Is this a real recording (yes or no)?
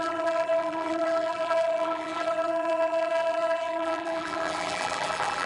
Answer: no